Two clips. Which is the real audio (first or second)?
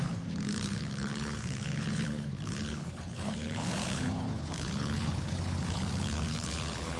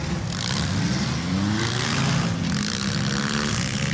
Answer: second